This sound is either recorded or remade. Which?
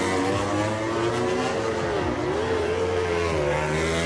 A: recorded